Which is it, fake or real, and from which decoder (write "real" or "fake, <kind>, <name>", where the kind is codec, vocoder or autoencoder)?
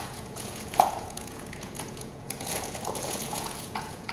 fake, vocoder, Vocos